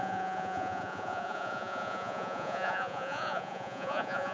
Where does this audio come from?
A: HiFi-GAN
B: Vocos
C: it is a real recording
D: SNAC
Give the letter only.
B